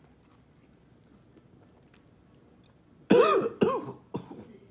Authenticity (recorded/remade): recorded